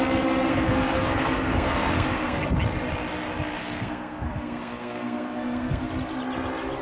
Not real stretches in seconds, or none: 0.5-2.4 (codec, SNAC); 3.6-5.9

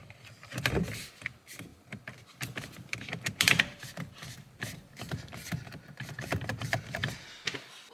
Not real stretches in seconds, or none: 0.0-7.0 (vocoder, BigVGAN v2); 7.5-7.9

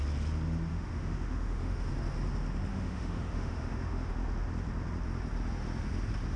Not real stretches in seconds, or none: 0.7-1.9 (autoencoder, DAC-VAE); 2.7-4.1

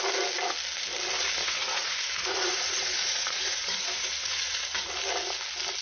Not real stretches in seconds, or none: 1.4-4.9 (vocoder, Vocos)

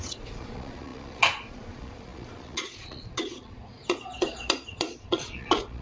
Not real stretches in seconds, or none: 0.0-5.8 (vocoder, Vocos)

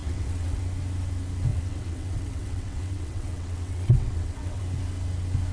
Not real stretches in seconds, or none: 0.0-0.6 (vocoder, WaveNeXt); 1.5-4.6

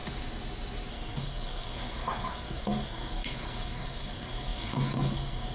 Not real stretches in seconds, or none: 0.9-5.5 (codec, SNAC)